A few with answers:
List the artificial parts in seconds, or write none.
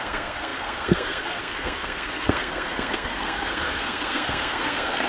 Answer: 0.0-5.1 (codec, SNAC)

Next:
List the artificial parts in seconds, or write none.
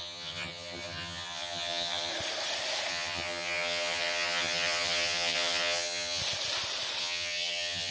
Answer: 0.0-2.1 (vocoder, HiFi-GAN); 2.9-6.2; 7.0-7.9